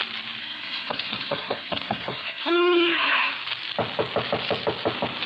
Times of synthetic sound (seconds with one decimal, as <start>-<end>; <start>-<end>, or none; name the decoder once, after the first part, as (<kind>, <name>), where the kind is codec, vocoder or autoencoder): 0.4-3.3 (codec, SNAC)